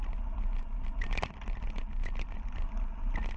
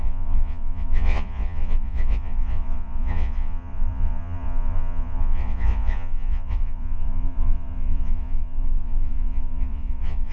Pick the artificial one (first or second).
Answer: second